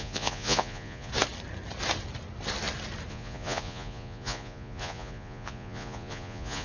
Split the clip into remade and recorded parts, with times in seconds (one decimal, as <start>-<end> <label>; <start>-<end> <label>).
0.0-1.1 remade; 1.1-3.1 recorded; 3.1-6.6 remade